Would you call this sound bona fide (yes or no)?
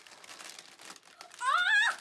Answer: yes